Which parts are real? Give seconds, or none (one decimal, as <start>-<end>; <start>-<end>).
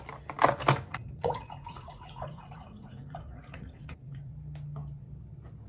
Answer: 0.0-0.9; 4.3-5.7